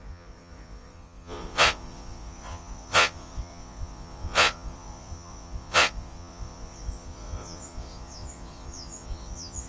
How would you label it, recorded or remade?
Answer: remade